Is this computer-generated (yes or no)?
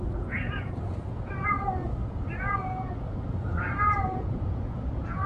yes